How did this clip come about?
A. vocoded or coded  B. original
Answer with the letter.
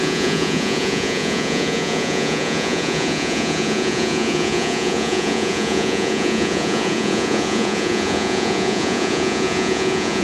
A